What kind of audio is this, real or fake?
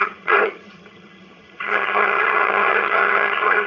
fake